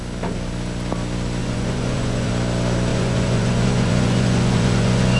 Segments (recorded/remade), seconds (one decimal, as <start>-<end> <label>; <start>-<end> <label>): 0.0-1.4 recorded; 1.4-2.3 remade; 2.3-2.9 recorded; 2.9-5.2 remade